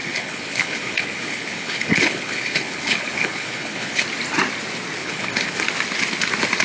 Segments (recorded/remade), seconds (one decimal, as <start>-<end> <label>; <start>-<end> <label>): 0.0-4.0 remade; 4.0-5.0 recorded; 5.0-5.6 remade; 5.6-6.6 recorded